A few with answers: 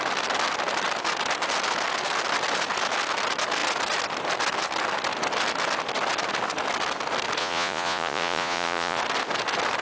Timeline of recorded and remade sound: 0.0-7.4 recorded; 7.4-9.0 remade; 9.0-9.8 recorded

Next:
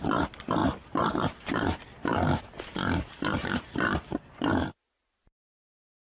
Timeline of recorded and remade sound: 0.0-0.6 recorded; 0.6-3.7 remade; 3.7-6.1 recorded

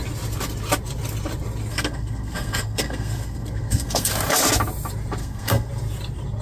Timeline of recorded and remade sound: 0.0-1.7 recorded; 1.7-4.1 remade; 4.1-5.2 recorded; 5.2-5.7 remade; 5.7-6.4 recorded

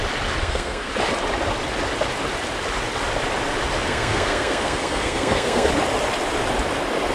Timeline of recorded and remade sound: 0.0-0.4 recorded; 0.4-0.9 remade; 0.9-3.9 recorded; 3.9-5.7 remade; 5.7-7.1 recorded